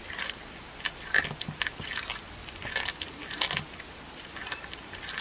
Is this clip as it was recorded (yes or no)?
yes